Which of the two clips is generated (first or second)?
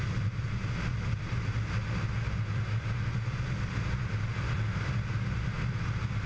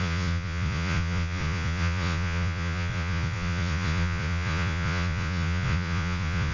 second